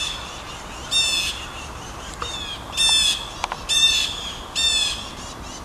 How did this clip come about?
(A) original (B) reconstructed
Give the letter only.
A